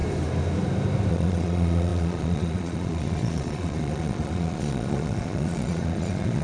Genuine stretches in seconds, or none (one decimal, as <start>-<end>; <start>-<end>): 0.0-1.1